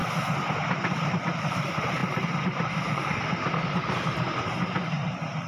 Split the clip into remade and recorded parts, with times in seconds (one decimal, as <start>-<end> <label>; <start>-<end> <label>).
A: 0.0-0.7 recorded; 0.7-5.5 remade